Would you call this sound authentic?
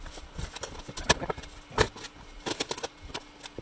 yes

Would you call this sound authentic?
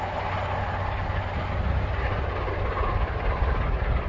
yes